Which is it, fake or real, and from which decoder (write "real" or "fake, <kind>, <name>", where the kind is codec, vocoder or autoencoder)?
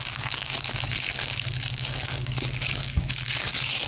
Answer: fake, codec, DAC